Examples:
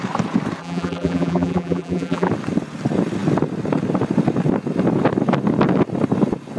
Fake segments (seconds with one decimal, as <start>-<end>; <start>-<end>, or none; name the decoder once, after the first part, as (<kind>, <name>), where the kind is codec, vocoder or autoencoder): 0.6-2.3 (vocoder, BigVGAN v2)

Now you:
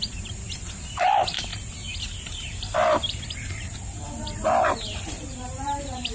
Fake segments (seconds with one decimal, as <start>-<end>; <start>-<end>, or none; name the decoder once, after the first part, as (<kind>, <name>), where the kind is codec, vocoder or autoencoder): 0.0-1.5 (vocoder, BigVGAN v2); 2.2-6.1

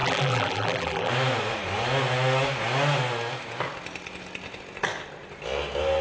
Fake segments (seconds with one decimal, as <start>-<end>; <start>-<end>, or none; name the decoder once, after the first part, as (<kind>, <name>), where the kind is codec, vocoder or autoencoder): 0.0-1.1 (vocoder, BigVGAN v2)

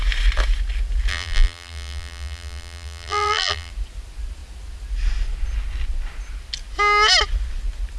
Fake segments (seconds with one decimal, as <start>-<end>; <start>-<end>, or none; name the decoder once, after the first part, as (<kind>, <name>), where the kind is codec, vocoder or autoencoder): 1.1-3.7 (vocoder, BigVGAN v2)